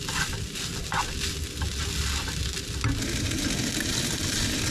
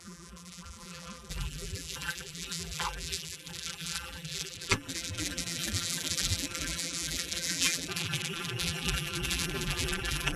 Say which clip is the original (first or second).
first